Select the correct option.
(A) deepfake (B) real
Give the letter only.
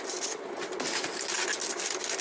B